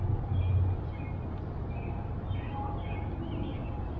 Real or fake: real